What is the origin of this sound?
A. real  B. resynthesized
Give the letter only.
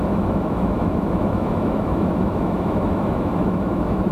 B